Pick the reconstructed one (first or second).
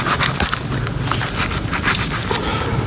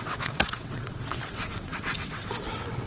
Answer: second